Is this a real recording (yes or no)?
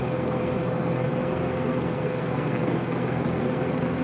no